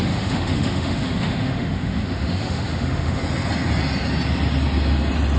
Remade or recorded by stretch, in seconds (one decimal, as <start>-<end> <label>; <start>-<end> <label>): 0.0-3.2 remade; 3.2-5.4 recorded